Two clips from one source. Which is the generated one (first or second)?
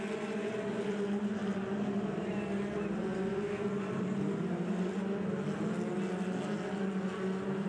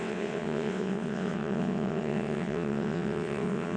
second